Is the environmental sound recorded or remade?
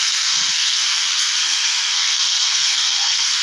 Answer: remade